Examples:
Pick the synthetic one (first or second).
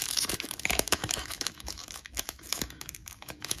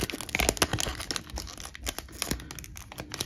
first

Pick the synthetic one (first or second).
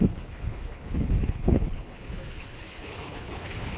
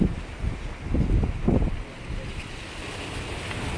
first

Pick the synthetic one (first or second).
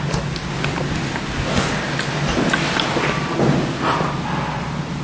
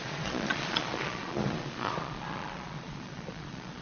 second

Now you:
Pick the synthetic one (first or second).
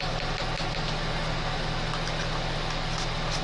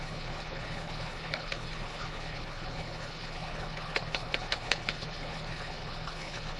second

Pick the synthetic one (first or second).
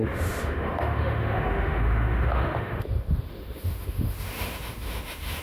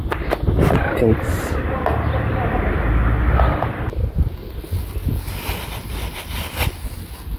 first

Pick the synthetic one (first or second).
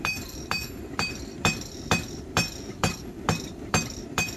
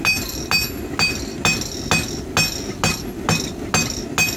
first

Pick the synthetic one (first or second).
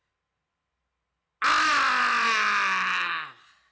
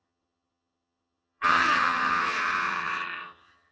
second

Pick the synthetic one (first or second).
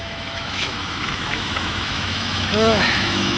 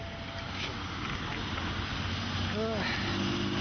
first